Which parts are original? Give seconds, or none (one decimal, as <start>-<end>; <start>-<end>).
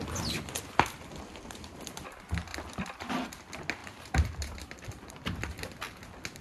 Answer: 0.0-2.5; 3.1-3.8; 5.6-6.4